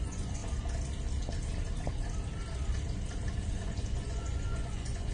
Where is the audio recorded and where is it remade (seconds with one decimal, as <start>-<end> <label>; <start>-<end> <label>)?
0.0-0.4 remade; 0.4-3.5 recorded; 3.5-5.1 remade